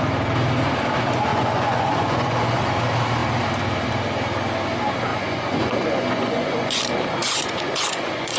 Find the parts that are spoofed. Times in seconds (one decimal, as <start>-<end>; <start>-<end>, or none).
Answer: 1.3-2.6; 5.1-6.8; 7.2-8.4